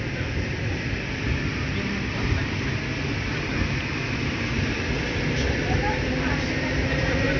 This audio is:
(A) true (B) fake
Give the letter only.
A